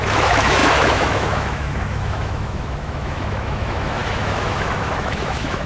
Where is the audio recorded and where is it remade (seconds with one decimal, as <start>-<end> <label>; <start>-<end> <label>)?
0.0-5.7 remade